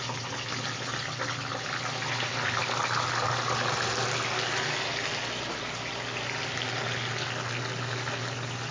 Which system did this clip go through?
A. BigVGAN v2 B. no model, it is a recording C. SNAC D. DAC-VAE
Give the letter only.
B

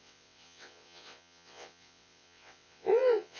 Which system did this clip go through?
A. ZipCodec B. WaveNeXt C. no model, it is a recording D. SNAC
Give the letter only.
B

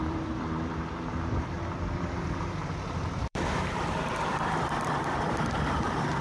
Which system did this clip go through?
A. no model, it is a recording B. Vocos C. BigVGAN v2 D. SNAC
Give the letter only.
C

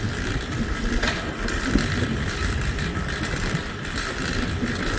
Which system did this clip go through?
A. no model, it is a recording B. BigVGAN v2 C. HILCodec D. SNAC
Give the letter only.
A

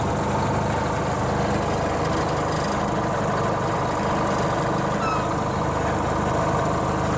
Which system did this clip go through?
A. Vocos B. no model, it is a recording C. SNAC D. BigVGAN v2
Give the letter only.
B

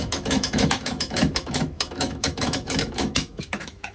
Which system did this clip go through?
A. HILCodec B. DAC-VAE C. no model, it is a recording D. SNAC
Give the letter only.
B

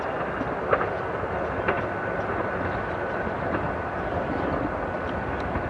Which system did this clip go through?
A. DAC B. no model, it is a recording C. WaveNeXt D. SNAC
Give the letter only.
B